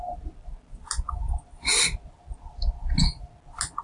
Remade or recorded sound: recorded